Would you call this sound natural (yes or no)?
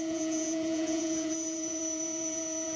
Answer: no